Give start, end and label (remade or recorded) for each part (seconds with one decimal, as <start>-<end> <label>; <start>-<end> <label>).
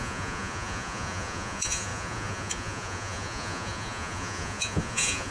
0.0-5.3 remade